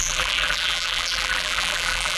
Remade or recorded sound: remade